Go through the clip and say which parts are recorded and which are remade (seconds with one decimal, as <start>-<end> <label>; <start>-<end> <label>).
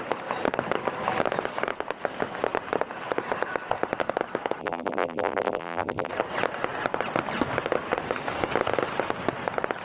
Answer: 0.0-4.6 recorded; 4.6-6.1 remade; 6.1-9.8 recorded